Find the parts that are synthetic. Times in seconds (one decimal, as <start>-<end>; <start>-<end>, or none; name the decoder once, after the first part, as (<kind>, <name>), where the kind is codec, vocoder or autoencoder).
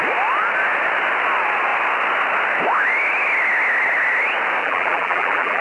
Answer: 4.6-5.6 (vocoder, BigVGAN v2)